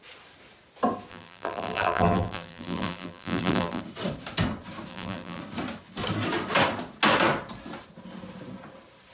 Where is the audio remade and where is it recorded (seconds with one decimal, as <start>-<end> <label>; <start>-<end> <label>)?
0.0-1.1 recorded; 1.1-3.8 remade; 3.8-4.9 recorded; 4.9-5.4 remade; 5.4-9.1 recorded